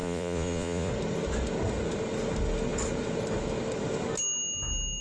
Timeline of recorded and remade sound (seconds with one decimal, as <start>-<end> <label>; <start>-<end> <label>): 0.0-0.9 remade; 0.9-5.0 recorded